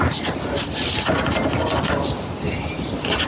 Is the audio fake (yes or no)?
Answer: no